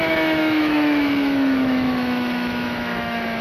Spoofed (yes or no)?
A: yes